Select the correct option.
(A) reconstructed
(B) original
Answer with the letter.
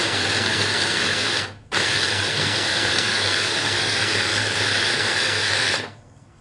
A